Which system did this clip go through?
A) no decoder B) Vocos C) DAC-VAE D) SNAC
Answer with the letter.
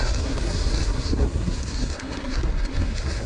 D